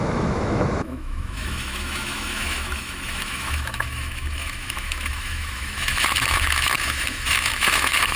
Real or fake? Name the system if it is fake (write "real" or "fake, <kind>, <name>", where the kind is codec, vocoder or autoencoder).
fake, autoencoder, DAC-VAE